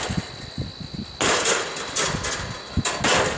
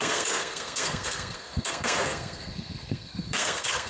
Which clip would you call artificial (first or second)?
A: second